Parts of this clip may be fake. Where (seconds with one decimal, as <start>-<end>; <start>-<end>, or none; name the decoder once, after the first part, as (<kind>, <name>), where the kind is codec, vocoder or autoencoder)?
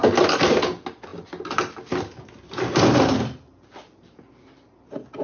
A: none